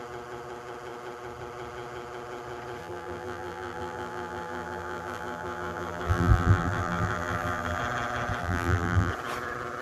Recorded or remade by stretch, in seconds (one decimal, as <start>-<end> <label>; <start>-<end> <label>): 0.0-2.8 recorded; 2.8-7.8 remade; 7.8-8.4 recorded; 8.4-9.1 remade; 9.1-9.8 recorded

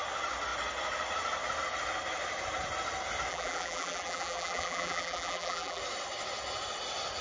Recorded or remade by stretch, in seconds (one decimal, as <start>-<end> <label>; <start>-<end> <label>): 0.0-3.3 recorded; 3.3-5.8 remade; 5.8-7.2 recorded

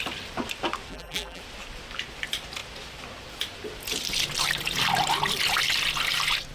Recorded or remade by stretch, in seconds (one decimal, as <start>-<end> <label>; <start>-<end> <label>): 0.0-0.9 recorded; 0.9-1.4 remade; 1.4-6.5 recorded